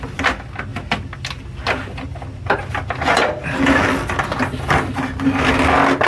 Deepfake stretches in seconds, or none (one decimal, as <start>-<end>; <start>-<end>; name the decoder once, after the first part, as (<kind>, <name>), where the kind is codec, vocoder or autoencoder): none